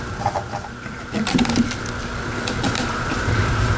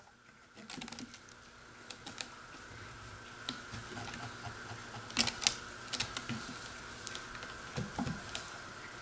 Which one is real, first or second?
second